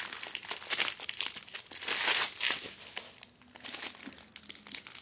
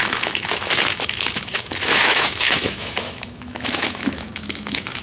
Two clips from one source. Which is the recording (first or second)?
first